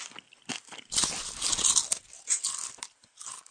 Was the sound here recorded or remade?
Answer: recorded